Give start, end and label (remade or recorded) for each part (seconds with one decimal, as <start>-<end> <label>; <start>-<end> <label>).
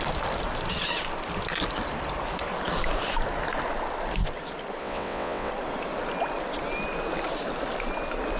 0.0-4.8 recorded; 4.8-5.5 remade; 5.5-8.4 recorded